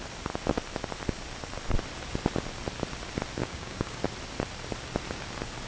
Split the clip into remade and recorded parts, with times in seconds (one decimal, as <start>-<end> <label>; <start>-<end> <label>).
0.0-3.4 recorded; 3.4-4.0 remade; 4.0-5.7 recorded